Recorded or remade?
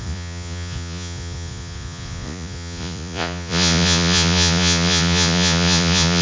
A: remade